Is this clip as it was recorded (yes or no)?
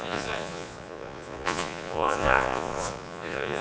no